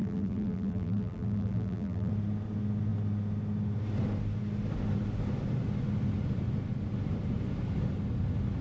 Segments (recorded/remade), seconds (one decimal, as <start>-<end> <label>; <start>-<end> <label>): 0.0-2.1 remade; 2.1-8.6 recorded